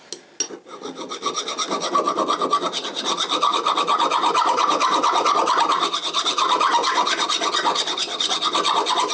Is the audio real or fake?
real